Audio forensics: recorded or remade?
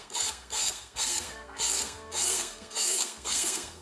remade